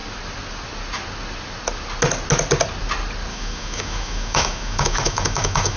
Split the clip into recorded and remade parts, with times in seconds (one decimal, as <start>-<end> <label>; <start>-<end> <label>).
0.0-3.3 recorded; 3.3-5.8 remade